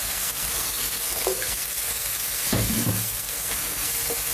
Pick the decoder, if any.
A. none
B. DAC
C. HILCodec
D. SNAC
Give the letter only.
D